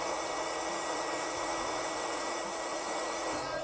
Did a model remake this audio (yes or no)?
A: yes